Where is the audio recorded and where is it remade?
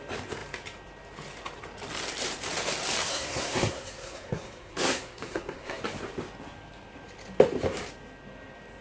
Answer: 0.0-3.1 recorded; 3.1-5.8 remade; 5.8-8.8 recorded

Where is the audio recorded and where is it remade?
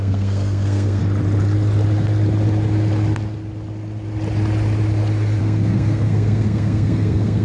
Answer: 0.0-1.0 remade; 1.0-5.4 recorded; 5.4-7.4 remade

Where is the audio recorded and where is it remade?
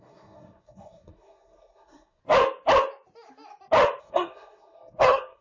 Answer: 0.0-2.2 remade; 2.2-4.0 recorded; 4.0-5.4 remade